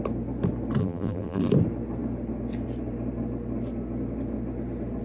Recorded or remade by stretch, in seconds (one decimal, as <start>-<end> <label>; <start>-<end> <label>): 0.0-0.8 recorded; 0.8-1.5 remade; 1.5-5.0 recorded